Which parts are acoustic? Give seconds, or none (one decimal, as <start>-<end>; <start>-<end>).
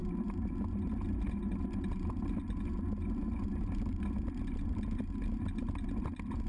0.0-6.5